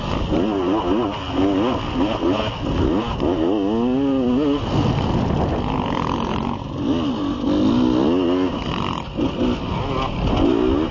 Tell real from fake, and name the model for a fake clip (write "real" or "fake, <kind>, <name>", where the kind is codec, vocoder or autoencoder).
real